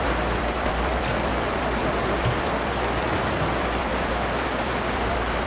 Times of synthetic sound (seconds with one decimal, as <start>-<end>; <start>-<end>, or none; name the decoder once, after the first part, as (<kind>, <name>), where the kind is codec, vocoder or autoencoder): 0.0-5.5 (vocoder, BigVGAN v2)